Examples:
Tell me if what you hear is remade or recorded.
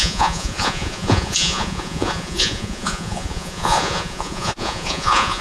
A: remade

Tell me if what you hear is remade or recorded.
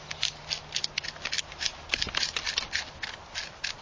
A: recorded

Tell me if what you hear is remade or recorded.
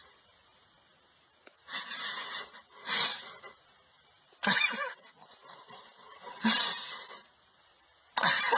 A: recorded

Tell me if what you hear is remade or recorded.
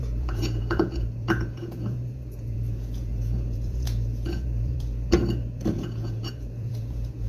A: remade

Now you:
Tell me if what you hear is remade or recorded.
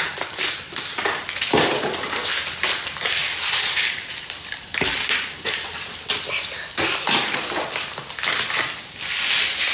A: recorded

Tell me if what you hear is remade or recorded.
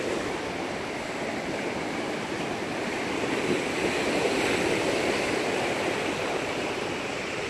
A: recorded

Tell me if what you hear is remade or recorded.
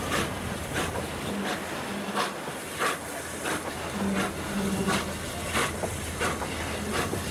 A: recorded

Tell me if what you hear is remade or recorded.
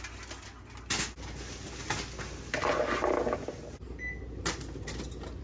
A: recorded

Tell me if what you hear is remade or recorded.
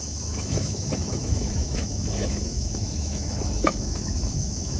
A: remade